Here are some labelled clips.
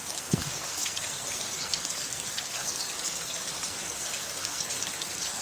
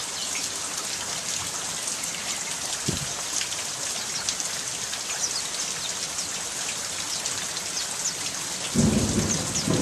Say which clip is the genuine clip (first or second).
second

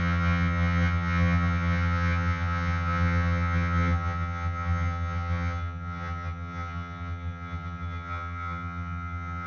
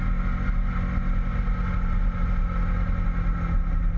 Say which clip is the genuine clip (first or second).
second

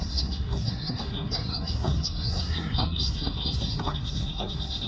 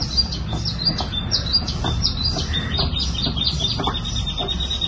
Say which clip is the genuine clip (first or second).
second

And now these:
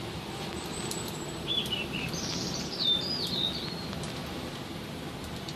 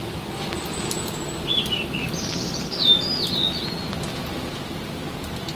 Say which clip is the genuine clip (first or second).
second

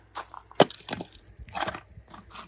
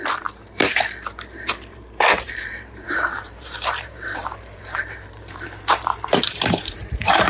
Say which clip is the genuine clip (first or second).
first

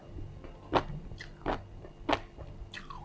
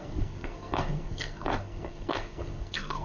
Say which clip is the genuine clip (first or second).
first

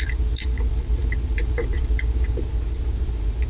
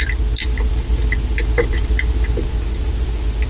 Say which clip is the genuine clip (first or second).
second